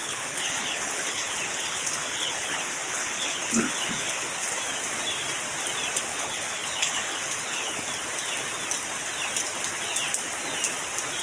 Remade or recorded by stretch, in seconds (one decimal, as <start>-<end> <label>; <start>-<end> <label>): 0.0-4.5 remade; 4.5-6.1 recorded; 6.1-7.8 remade; 7.8-11.2 recorded